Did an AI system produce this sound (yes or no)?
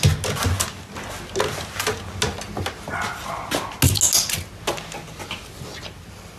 no